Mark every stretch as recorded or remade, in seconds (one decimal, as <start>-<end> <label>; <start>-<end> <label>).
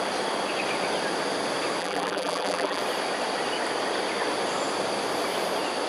0.0-1.8 recorded; 1.8-2.8 remade; 2.8-5.9 recorded